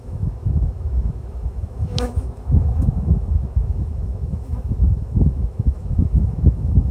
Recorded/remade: remade